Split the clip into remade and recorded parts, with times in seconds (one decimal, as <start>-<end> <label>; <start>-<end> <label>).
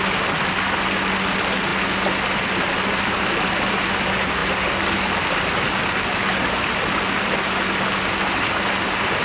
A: 0.0-9.2 recorded